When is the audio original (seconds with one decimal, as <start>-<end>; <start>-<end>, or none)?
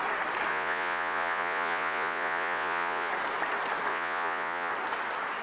0.0-0.5; 3.1-3.9; 4.7-5.4